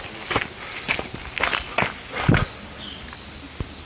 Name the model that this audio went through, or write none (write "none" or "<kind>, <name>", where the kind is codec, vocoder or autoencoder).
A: none